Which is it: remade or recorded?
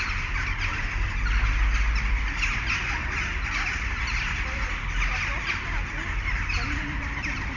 recorded